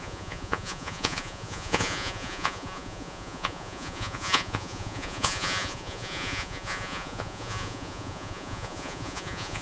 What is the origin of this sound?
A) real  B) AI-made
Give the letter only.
B